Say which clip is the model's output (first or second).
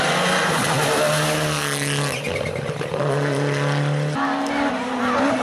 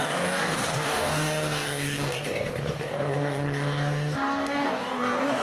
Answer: second